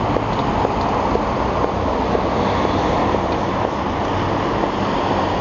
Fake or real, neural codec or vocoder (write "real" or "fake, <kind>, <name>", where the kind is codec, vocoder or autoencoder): real